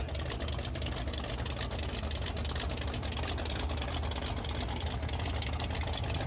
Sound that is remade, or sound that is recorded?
recorded